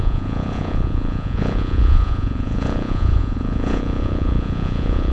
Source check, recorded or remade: remade